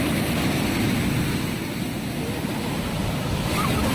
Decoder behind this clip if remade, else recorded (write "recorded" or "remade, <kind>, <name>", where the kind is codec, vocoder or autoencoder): recorded